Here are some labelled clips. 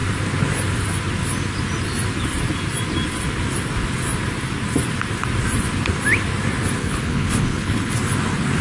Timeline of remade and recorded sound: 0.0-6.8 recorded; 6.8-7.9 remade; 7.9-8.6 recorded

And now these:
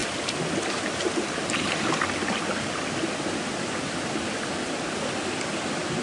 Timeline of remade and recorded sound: 0.0-6.0 recorded

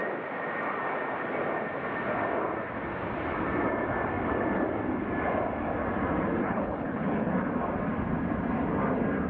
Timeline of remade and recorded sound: 0.0-6.4 recorded; 6.4-7.3 remade; 7.3-9.3 recorded

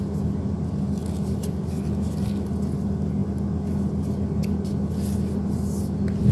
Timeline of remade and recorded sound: 0.0-6.3 recorded

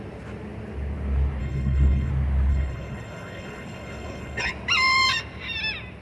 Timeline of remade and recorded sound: 0.0-1.4 recorded; 1.4-2.1 remade; 2.1-2.5 recorded; 2.5-4.5 remade; 4.5-6.0 recorded

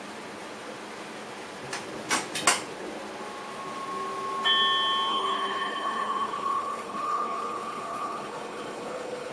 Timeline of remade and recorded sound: 0.0-5.1 recorded; 5.1-9.3 remade

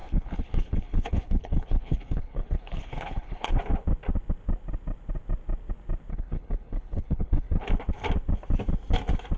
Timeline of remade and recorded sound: 0.0-3.5 remade; 3.5-6.1 recorded; 6.1-7.7 remade; 7.7-9.4 recorded